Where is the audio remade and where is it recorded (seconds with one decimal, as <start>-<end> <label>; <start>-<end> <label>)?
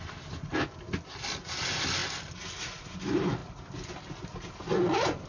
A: 0.0-5.3 recorded